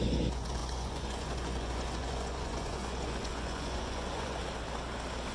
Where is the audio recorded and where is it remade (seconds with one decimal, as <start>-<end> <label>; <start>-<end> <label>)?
0.0-4.4 remade; 4.4-5.3 recorded